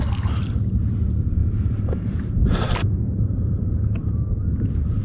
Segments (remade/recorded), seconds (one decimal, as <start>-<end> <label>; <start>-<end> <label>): 0.0-1.4 recorded; 1.4-4.4 remade; 4.4-5.0 recorded